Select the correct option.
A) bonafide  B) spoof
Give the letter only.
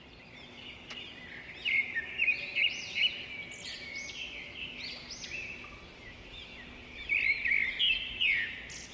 A